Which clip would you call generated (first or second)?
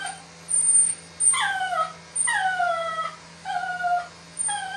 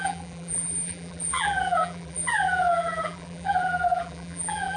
second